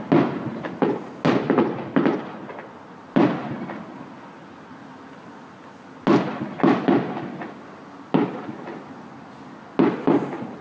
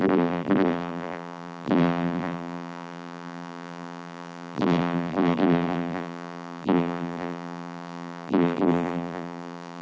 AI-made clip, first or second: second